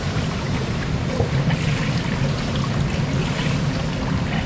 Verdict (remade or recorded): recorded